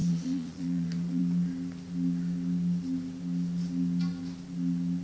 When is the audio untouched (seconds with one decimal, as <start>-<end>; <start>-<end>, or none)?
1.2-5.0